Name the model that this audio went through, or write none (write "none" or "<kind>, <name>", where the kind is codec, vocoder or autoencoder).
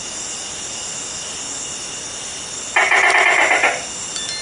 none